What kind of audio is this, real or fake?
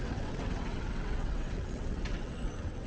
fake